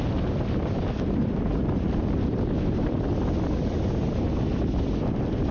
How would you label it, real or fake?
real